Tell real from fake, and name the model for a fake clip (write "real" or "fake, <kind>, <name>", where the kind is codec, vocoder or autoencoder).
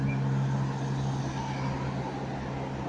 real